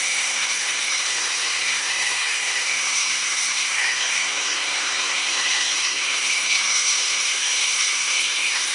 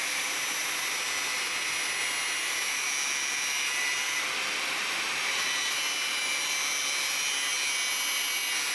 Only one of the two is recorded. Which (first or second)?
second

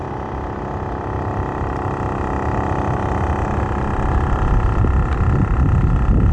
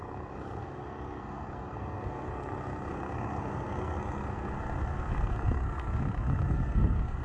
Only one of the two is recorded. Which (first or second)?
first